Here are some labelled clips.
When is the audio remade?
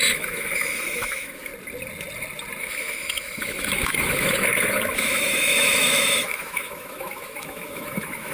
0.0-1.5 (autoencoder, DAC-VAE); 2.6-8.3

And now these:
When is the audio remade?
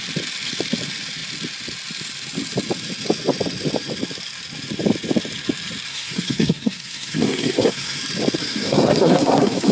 5.9-8.0 (codec, SNAC); 8.4-9.7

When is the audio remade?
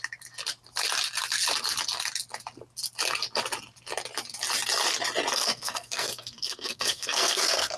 5.3-7.8 (codec, SNAC)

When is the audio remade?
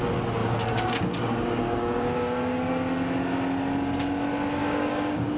0.4-2.7 (codec, DAC); 4.6-5.4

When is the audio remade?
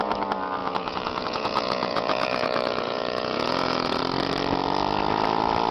0.6-4.0 (vocoder, Vocos)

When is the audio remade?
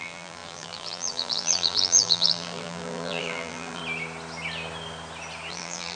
0.0-3.8 (vocoder, BigVGAN v2); 5.5-6.0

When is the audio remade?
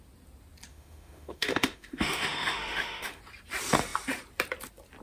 0.7-3.2 (autoencoder, DAC-VAE)